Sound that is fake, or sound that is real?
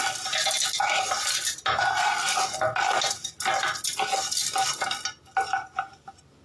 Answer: real